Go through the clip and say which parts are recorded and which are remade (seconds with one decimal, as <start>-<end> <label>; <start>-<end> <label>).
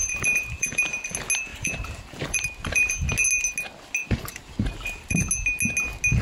0.0-0.8 remade; 0.8-1.5 recorded; 1.5-2.9 remade; 2.9-4.0 recorded; 4.0-5.3 remade; 5.3-6.2 recorded